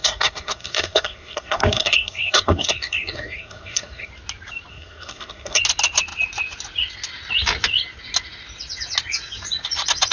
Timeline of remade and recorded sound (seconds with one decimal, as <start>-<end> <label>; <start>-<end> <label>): 0.0-4.1 remade; 4.1-4.7 recorded; 4.7-5.6 remade; 5.6-10.1 recorded